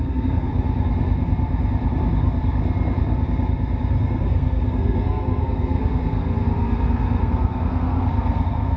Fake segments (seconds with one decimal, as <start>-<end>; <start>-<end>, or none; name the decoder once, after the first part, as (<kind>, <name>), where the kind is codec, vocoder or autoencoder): 0.0-0.5 (codec, SNAC); 4.0-6.2; 7.2-8.8